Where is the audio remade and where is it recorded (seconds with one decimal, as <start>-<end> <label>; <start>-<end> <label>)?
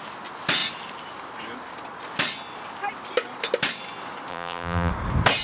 0.0-4.3 recorded; 4.3-4.9 remade; 4.9-5.4 recorded